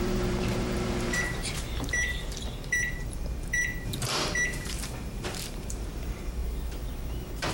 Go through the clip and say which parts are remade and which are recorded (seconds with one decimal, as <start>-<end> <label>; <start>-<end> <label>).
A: 0.0-1.4 remade; 1.4-2.1 recorded; 2.1-6.4 remade; 6.4-7.5 recorded